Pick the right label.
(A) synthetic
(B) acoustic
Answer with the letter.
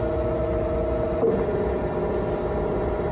B